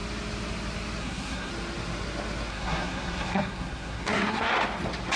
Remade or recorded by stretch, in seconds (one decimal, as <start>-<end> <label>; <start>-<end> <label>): 0.0-1.0 recorded; 1.0-1.5 remade; 1.5-2.5 recorded; 2.5-4.5 remade; 4.5-5.2 recorded